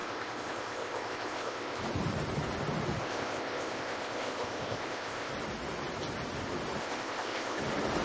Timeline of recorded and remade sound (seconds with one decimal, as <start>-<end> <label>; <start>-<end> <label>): 0.0-1.8 remade; 1.8-3.0 recorded; 3.0-5.3 remade; 5.3-6.8 recorded; 6.8-7.6 remade; 7.6-8.0 recorded